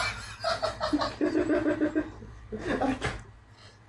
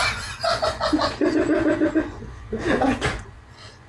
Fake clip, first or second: second